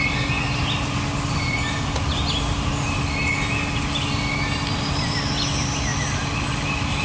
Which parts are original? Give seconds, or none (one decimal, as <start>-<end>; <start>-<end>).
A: 0.0-7.0